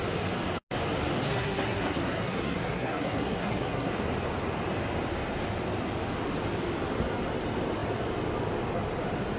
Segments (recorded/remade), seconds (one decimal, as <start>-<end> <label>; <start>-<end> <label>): 0.0-1.3 recorded; 1.3-3.9 remade; 3.9-9.4 recorded